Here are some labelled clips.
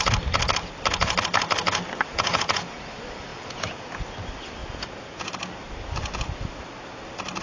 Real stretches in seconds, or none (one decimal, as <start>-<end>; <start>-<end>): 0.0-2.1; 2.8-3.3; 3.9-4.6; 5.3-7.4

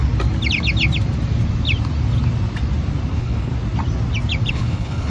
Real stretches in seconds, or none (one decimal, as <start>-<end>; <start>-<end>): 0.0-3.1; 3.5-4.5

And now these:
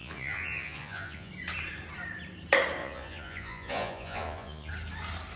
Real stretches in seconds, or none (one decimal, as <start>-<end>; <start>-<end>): 1.3-2.8; 4.7-5.4